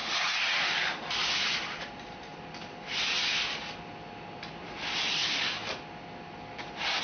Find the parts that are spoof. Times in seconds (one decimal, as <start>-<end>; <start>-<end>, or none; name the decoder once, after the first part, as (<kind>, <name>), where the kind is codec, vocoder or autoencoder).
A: none